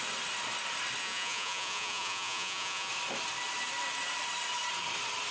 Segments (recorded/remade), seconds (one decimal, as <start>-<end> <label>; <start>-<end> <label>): 0.0-1.0 recorded; 1.0-2.9 remade; 2.9-5.3 recorded